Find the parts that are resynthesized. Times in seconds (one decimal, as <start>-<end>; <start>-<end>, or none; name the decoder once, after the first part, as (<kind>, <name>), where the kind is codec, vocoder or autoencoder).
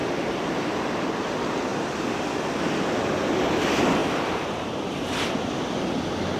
0.0-0.6 (vocoder, BigVGAN v2); 4.0-5.3